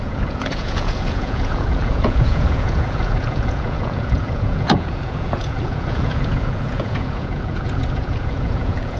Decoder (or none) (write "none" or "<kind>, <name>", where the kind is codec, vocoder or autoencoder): vocoder, Vocos